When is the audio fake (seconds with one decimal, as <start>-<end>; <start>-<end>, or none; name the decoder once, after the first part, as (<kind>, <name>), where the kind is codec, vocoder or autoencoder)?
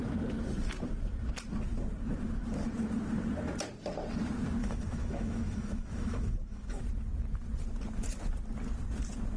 4.6-6.8 (autoencoder, DAC-VAE)